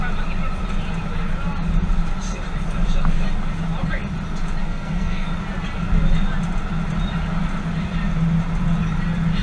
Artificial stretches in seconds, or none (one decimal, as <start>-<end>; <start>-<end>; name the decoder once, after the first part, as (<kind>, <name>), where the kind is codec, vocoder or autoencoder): 4.6-5.3 (codec, SNAC)